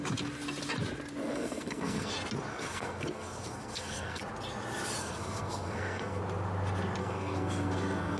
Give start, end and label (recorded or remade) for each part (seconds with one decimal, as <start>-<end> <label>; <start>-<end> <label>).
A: 0.0-1.2 recorded; 1.2-2.1 remade; 2.1-2.5 recorded; 2.5-4.2 remade; 4.2-5.0 recorded; 5.0-6.2 remade; 6.2-7.0 recorded; 7.0-8.2 remade